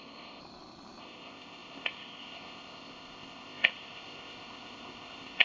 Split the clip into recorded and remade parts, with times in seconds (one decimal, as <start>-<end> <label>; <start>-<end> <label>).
0.0-0.4 remade; 0.4-1.0 recorded; 1.0-5.4 remade